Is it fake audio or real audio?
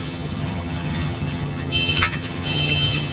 fake